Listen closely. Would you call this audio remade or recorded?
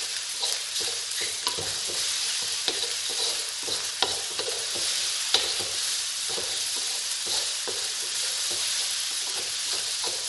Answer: remade